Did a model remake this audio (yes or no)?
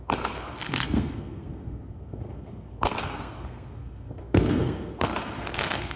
yes